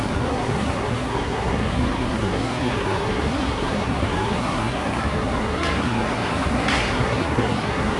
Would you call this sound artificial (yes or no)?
yes